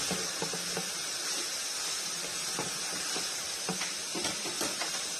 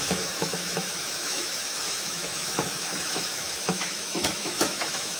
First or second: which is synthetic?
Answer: second